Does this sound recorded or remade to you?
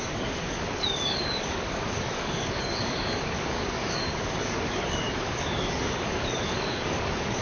remade